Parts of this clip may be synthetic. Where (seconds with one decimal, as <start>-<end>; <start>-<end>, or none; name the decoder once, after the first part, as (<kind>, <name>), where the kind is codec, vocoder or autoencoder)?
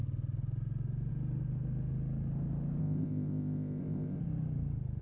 2.8-4.2 (codec, ZipCodec)